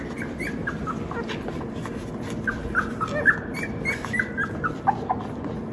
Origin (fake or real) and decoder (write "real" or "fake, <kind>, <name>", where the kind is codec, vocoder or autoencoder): real